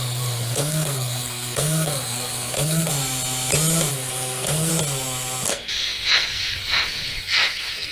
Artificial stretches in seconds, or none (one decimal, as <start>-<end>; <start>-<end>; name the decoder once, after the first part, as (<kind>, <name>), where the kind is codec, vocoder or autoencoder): 0.0-2.9 (codec, SNAC); 3.9-4.7; 5.5-7.9